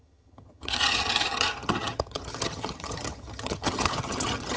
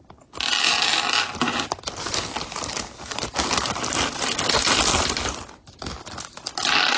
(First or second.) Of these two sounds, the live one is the second